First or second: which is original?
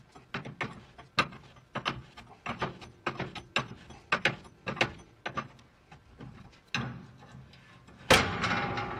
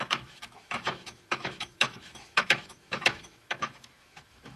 first